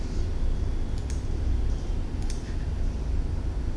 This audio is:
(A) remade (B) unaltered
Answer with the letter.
B